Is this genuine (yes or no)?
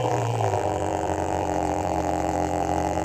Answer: no